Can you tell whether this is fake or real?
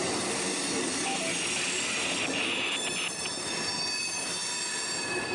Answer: real